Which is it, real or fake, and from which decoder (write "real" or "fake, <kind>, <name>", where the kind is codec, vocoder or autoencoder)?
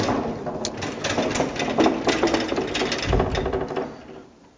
real